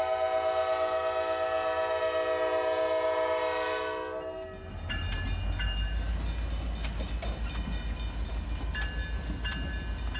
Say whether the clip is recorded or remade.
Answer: recorded